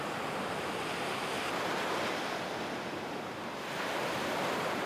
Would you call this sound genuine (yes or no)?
no